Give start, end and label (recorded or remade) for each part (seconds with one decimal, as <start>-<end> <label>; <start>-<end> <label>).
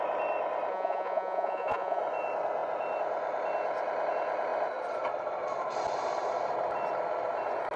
0.0-0.7 recorded; 0.7-2.0 remade; 2.0-7.8 recorded